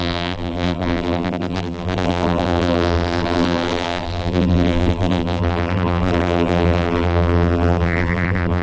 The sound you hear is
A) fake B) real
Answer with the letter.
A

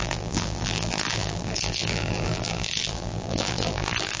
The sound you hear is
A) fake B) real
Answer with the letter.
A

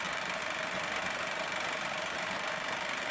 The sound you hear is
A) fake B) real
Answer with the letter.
A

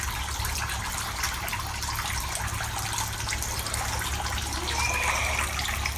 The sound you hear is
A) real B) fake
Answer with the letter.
A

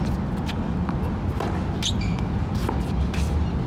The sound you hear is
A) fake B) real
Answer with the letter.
B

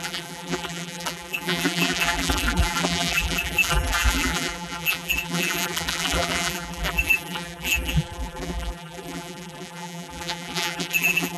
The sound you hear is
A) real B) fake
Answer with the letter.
B